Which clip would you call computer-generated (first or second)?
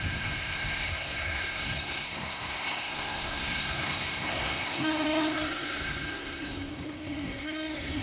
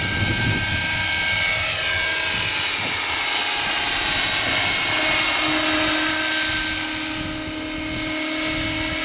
first